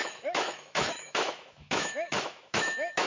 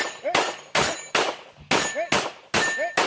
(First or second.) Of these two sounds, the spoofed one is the first